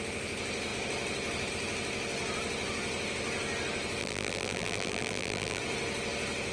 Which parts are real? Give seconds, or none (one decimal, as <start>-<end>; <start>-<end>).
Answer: 0.0-4.0; 5.6-6.5